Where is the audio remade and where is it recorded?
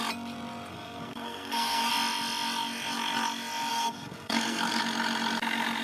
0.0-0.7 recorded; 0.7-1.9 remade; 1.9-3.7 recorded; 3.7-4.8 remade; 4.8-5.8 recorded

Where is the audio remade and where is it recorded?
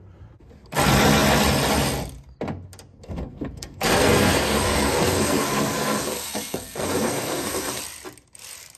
0.0-2.9 recorded; 2.9-7.8 remade; 7.8-8.8 recorded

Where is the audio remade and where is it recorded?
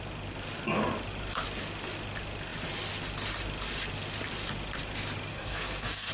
0.0-5.3 recorded; 5.3-6.1 remade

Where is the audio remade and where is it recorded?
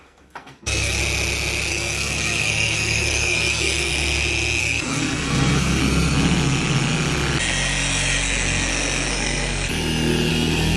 0.0-1.0 remade; 1.0-1.7 recorded; 1.7-3.9 remade; 3.9-4.6 recorded; 4.6-5.8 remade; 5.8-9.1 recorded; 9.1-9.7 remade; 9.7-10.3 recorded; 10.3-10.8 remade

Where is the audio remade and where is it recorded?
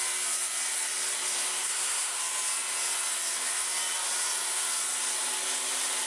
0.0-1.6 recorded; 1.6-2.2 remade; 2.2-6.1 recorded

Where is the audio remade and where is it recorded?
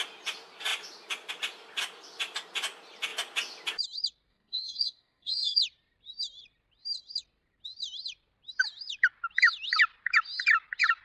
0.0-4.3 recorded; 4.3-5.6 remade; 5.6-11.0 recorded